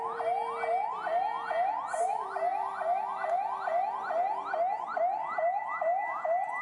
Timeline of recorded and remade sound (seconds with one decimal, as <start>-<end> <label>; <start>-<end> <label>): 0.0-6.6 recorded